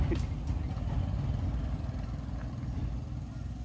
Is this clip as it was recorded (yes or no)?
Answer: yes